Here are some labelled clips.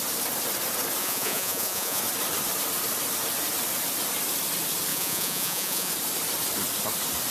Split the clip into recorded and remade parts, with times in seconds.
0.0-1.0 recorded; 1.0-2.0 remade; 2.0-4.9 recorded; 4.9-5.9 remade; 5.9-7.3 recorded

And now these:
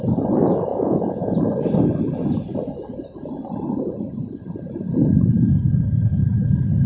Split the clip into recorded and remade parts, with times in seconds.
0.0-0.7 recorded; 0.7-1.4 remade; 1.4-6.9 recorded

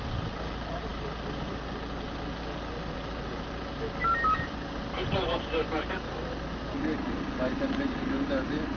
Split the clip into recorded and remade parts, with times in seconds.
0.0-8.8 recorded

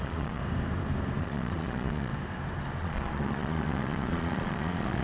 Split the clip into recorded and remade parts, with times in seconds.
0.0-0.4 remade; 0.4-1.2 recorded; 1.2-2.1 remade; 2.1-2.8 recorded; 2.8-5.0 remade

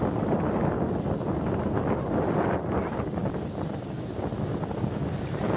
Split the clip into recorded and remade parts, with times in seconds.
0.0-5.6 recorded

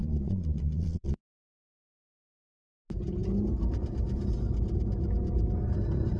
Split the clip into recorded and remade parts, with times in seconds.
0.0-1.2 remade; 1.2-6.2 recorded